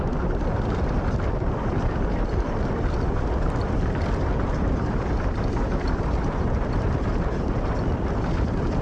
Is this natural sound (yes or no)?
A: yes